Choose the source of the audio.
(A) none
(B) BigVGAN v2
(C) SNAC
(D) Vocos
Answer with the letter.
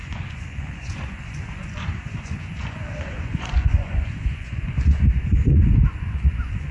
D